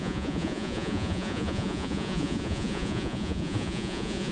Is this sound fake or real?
fake